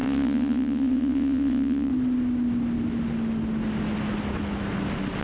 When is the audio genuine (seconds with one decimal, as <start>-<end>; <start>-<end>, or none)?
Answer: 1.9-5.2